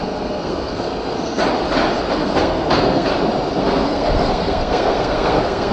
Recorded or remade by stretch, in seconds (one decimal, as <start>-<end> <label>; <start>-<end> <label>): 0.0-1.4 remade; 1.4-2.1 recorded; 2.1-3.1 remade; 3.1-3.6 recorded; 3.6-5.7 remade